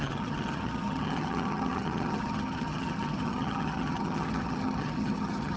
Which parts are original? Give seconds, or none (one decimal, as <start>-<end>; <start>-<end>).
none